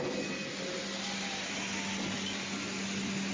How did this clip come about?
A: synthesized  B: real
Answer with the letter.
B